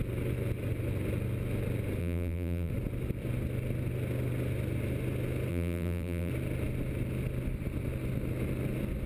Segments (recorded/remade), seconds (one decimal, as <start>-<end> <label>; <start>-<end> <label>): 0.0-2.0 recorded; 2.0-2.7 remade; 2.7-5.5 recorded; 5.5-6.3 remade; 6.3-9.1 recorded